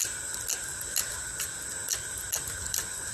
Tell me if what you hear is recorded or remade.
recorded